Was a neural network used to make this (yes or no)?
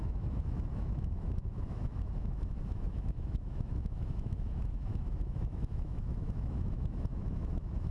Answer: yes